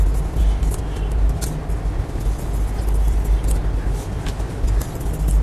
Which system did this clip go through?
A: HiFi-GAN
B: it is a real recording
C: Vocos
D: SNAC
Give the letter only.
B